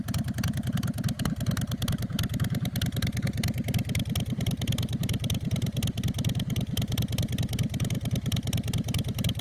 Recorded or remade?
recorded